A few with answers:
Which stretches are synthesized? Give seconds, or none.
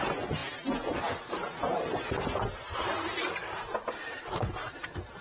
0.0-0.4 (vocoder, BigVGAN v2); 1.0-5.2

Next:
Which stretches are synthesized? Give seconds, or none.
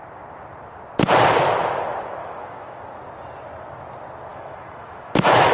2.2-2.8 (autoencoder, DAC-VAE); 4.3-5.5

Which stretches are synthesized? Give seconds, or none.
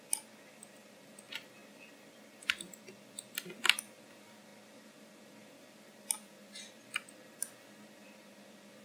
none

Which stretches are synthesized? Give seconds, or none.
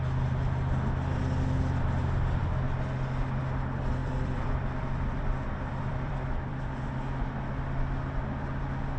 4.0-6.9 (vocoder, BigVGAN v2)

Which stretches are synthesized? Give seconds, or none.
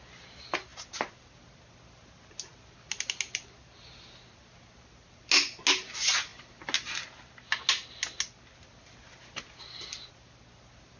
none